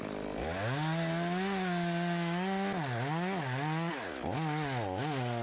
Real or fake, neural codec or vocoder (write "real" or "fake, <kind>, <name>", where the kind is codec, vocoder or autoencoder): real